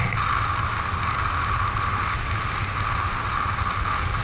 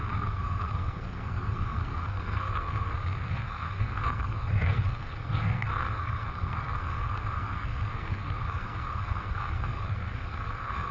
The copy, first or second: second